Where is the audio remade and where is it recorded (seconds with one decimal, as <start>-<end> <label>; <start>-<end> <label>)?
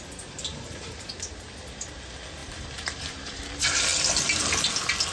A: 0.0-0.5 recorded; 0.5-1.1 remade; 1.1-2.4 recorded; 2.4-3.4 remade; 3.4-5.1 recorded